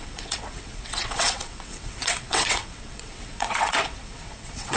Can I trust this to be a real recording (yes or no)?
no